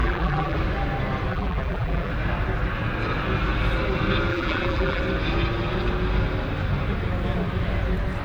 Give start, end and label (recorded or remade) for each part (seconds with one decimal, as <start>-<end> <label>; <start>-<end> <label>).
0.0-0.6 remade; 0.6-1.3 recorded; 1.3-2.1 remade; 2.1-4.3 recorded; 4.3-5.0 remade; 5.0-8.2 recorded